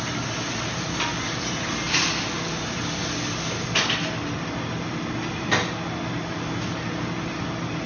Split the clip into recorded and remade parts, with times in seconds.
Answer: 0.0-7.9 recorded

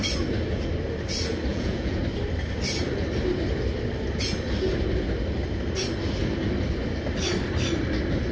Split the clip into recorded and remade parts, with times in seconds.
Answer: 0.0-1.5 recorded; 1.5-2.0 remade; 2.0-8.3 recorded

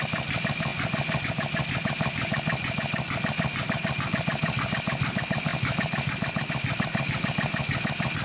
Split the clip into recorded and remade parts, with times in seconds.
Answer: 0.0-8.2 recorded

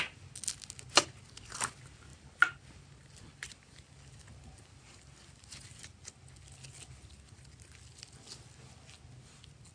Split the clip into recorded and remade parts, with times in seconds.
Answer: 0.0-9.7 recorded

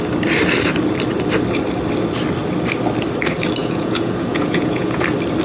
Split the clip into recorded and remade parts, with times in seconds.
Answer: 0.0-3.6 recorded; 3.6-5.0 remade; 5.0-5.4 recorded

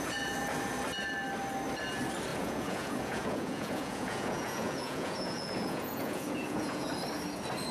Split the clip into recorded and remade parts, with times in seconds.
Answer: 0.0-2.3 recorded; 2.3-6.9 remade; 6.9-7.7 recorded